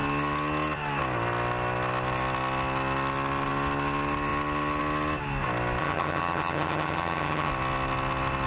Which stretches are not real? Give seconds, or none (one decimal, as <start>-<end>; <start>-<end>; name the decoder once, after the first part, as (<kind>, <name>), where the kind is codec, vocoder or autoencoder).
5.8-7.5 (vocoder, HiFi-GAN)